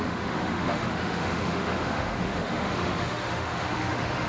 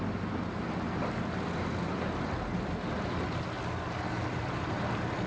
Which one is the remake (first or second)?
first